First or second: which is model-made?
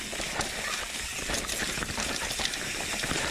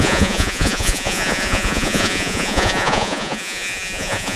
second